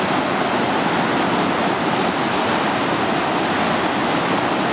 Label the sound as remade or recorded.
recorded